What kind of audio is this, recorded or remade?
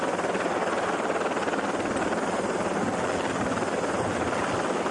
recorded